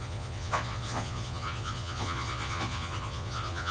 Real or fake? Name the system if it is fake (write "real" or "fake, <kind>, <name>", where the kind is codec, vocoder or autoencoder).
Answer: fake, vocoder, Vocos